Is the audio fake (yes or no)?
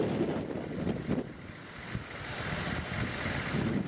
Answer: no